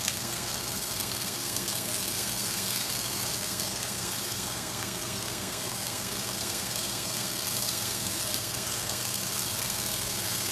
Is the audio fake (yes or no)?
yes